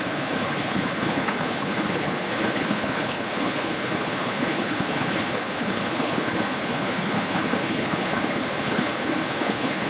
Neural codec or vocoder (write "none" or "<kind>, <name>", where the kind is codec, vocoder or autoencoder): codec, HILCodec